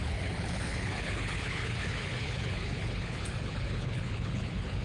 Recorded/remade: remade